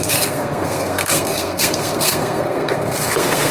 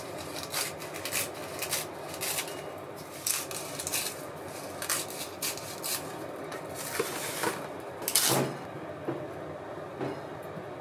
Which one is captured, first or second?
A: second